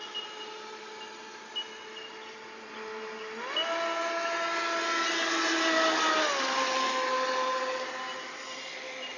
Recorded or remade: recorded